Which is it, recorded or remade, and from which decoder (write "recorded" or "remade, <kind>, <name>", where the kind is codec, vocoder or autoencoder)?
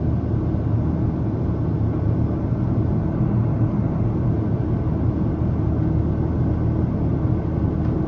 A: recorded